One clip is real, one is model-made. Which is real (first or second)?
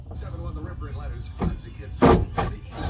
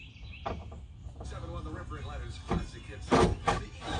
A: second